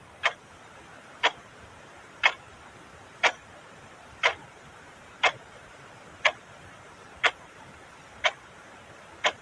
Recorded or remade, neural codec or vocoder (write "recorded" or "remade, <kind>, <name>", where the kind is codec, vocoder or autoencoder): remade, vocoder, BigVGAN v2